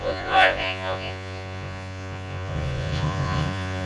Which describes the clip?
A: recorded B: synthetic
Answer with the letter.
B